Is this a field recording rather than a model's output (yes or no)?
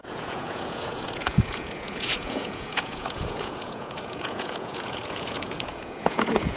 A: no